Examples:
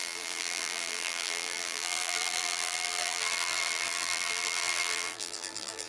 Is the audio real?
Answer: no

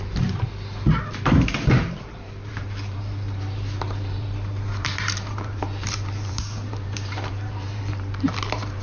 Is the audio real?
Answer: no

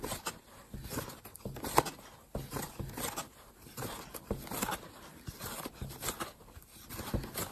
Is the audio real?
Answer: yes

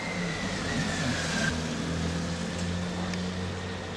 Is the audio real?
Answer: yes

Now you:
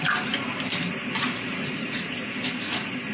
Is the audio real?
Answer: yes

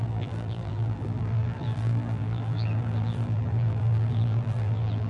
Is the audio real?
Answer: no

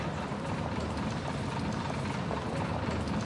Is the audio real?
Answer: yes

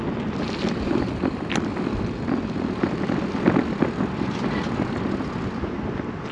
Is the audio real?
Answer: yes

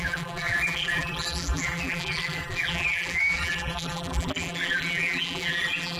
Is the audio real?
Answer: no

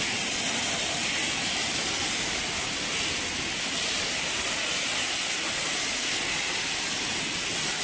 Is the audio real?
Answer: yes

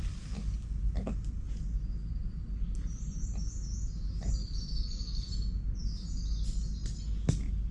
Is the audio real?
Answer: yes